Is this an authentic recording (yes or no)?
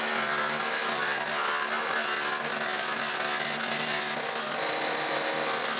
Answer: yes